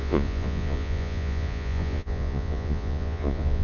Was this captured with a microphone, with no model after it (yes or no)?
no